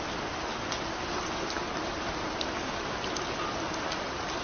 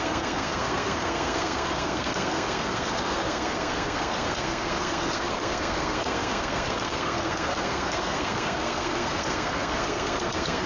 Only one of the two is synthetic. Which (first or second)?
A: second